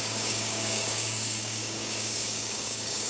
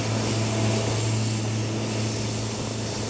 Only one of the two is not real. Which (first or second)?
first